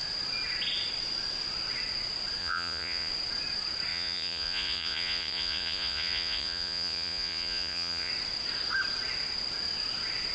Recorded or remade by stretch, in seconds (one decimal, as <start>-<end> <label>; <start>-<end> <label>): 0.0-2.4 recorded; 2.4-3.1 remade; 3.1-3.9 recorded; 3.9-8.1 remade; 8.1-10.3 recorded